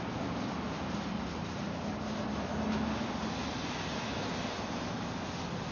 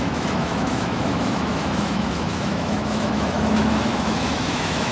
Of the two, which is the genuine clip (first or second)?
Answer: first